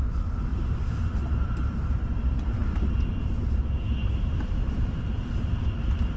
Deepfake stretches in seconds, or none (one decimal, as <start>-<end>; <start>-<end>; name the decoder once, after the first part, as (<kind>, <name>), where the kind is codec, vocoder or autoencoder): 0.5-1.0 (vocoder, BigVGAN v2); 4.0-5.0